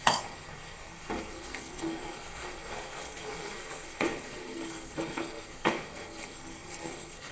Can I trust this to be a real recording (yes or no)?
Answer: no